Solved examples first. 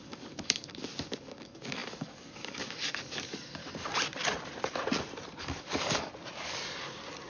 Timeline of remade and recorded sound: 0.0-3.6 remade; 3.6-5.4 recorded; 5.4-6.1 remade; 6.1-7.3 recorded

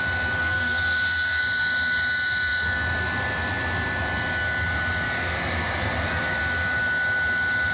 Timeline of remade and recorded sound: 0.0-0.4 recorded; 0.4-1.4 remade; 1.4-7.7 recorded

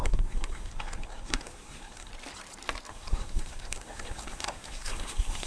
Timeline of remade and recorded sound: 0.0-2.1 remade; 2.1-2.9 recorded; 2.9-5.5 remade

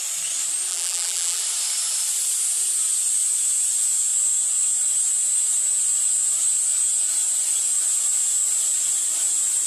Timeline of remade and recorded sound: 0.0-0.7 recorded; 0.7-1.4 remade; 1.4-9.7 recorded